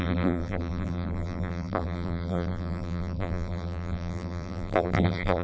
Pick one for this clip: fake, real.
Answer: fake